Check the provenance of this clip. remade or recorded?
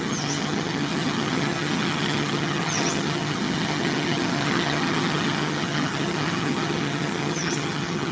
remade